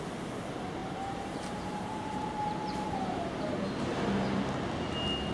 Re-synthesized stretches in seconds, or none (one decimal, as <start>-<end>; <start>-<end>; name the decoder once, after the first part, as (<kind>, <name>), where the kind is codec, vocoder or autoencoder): 0.8-4.0 (vocoder, BigVGAN v2)